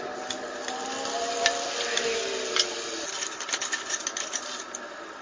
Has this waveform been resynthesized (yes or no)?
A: no